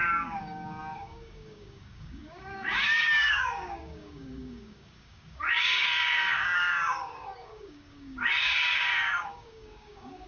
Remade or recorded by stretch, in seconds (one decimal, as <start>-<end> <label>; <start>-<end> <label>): 0.0-10.3 remade